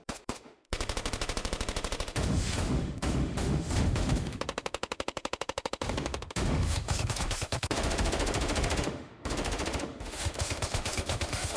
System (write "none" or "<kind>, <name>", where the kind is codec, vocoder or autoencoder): autoencoder, DAC-VAE